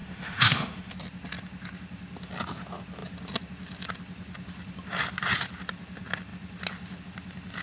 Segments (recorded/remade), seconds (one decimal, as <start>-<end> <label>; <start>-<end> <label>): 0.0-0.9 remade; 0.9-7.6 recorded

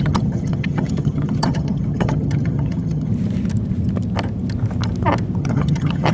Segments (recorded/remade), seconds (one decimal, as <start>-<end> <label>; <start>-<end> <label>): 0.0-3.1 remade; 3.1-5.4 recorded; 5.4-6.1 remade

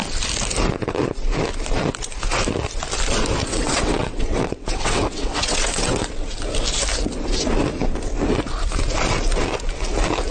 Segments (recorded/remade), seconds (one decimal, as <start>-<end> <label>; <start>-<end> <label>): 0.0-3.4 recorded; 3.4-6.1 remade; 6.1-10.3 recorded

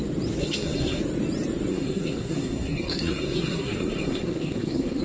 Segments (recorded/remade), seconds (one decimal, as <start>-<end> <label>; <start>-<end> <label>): 0.0-0.4 recorded; 0.4-1.0 remade; 1.0-1.7 recorded; 1.7-5.0 remade